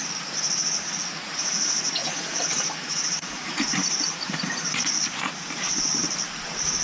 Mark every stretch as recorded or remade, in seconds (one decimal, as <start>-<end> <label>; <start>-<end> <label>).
0.0-1.1 recorded; 1.1-5.0 remade; 5.0-6.8 recorded